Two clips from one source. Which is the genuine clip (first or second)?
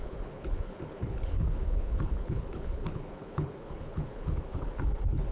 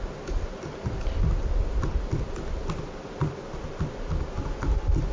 second